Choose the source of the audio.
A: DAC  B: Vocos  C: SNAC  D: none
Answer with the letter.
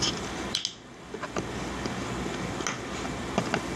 D